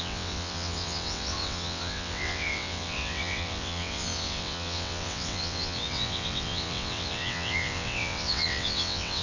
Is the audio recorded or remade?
remade